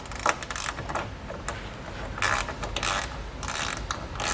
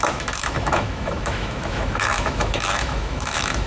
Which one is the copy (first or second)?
second